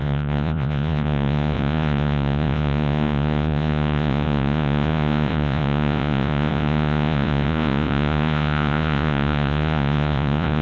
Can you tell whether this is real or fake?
fake